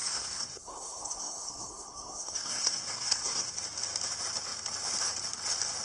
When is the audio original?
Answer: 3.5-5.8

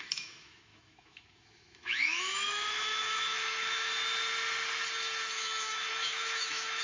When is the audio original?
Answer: 3.9-5.3

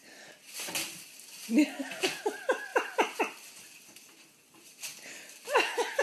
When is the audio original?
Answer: 1.5-2.7; 3.2-6.0

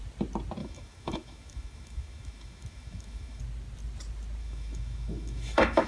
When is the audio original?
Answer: 0.0-0.6; 3.4-4.4